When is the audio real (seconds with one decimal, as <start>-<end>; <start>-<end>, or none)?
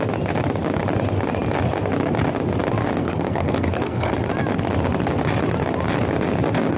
0.0-3.0; 4.1-6.8